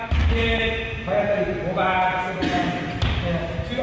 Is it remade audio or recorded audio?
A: recorded